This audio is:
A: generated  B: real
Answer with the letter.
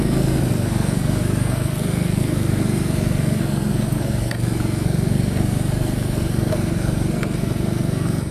A